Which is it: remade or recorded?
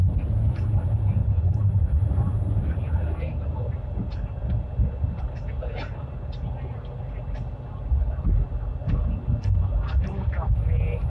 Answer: recorded